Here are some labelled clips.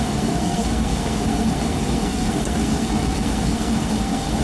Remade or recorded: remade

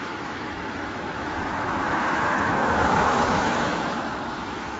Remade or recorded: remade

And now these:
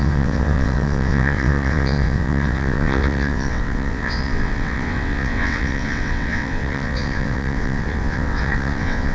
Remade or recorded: remade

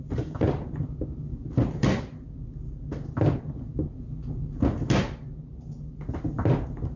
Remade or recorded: recorded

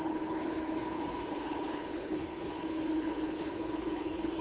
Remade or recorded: remade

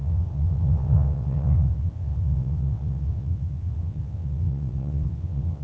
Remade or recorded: remade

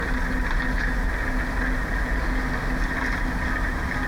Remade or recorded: recorded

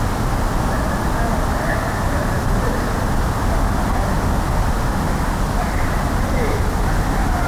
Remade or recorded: recorded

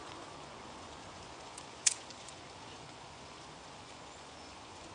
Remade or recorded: remade